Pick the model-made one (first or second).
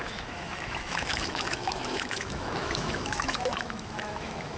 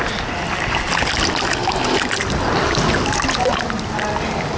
first